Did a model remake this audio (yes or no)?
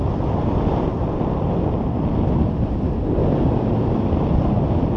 no